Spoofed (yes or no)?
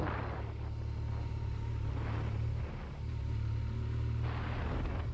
no